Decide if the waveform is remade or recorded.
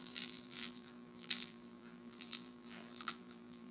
remade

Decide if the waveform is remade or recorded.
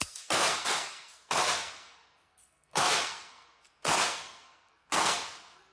remade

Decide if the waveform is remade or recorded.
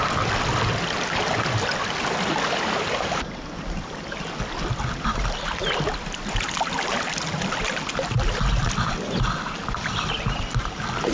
recorded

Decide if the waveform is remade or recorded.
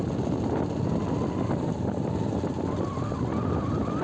recorded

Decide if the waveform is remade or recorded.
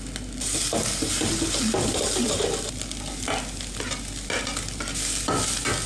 recorded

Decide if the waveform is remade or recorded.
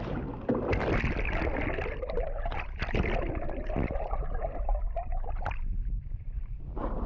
recorded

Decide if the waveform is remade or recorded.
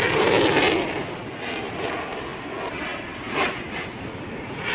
recorded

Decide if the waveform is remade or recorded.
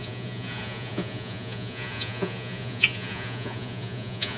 remade